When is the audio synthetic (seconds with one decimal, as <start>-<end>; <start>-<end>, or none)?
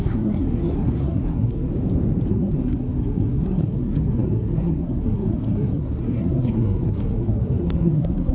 0.0-1.7; 2.3-8.3